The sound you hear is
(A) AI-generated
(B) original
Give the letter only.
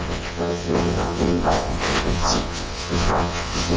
A